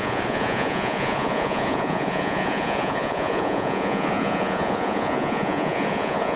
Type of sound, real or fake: fake